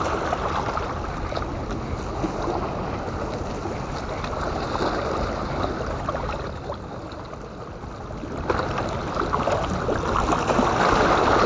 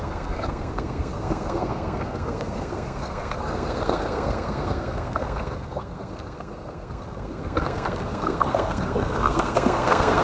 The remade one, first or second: second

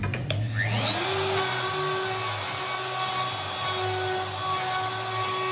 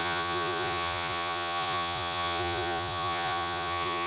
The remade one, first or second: second